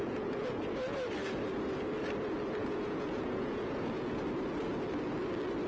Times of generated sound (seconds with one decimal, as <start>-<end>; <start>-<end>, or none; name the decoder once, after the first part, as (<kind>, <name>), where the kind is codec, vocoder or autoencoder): 0.0-0.6 (vocoder, Vocos); 2.6-4.2